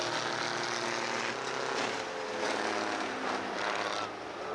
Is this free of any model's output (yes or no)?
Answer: yes